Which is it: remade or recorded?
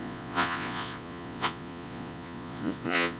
remade